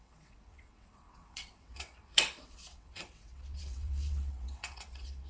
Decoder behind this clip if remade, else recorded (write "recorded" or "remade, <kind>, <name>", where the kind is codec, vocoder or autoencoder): remade, vocoder, WaveNeXt